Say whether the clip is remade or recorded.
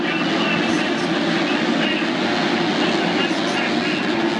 recorded